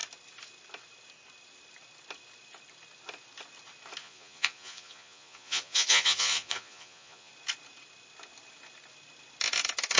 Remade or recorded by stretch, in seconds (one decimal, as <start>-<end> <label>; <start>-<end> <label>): 0.0-4.0 recorded; 4.0-7.3 remade; 7.3-10.0 recorded